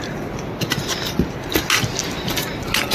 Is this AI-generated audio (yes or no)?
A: no